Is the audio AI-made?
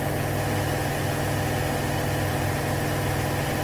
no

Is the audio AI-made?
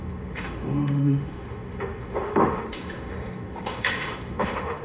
yes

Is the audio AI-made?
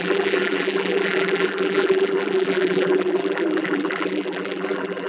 yes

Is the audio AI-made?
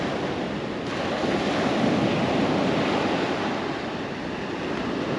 no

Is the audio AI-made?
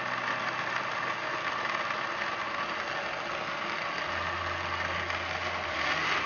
no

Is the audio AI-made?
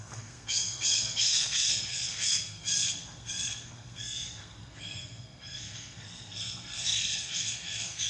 yes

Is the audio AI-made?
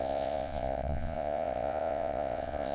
yes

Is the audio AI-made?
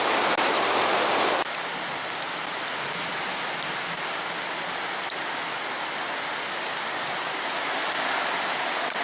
no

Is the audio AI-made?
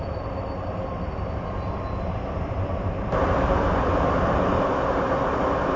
yes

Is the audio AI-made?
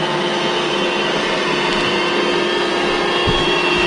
no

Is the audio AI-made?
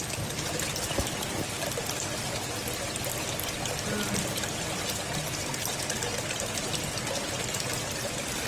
no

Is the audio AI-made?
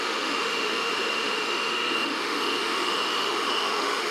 yes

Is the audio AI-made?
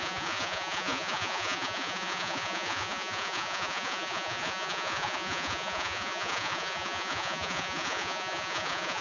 yes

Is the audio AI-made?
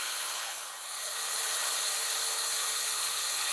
yes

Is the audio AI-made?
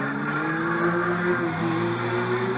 no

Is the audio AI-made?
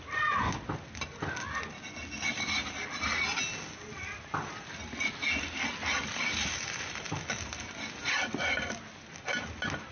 no